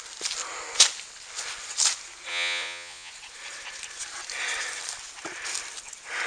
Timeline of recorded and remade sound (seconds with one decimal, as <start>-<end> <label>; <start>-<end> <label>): 0.0-2.3 recorded; 2.3-3.1 remade; 3.1-6.3 recorded